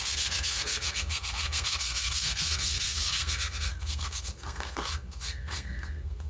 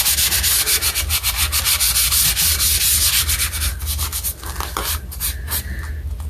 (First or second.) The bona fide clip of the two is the second